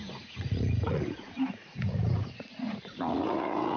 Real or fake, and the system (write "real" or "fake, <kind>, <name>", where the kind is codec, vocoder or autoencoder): fake, vocoder, Vocos